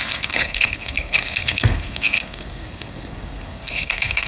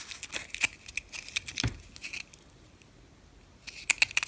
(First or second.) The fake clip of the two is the first